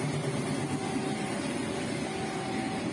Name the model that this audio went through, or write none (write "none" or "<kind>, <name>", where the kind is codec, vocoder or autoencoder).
none